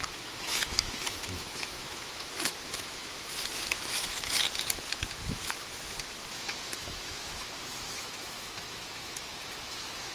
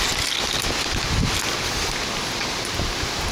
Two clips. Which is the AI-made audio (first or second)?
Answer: first